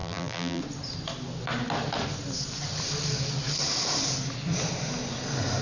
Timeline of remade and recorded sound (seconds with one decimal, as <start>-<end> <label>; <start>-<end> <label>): 0.0-0.6 remade; 0.6-5.6 recorded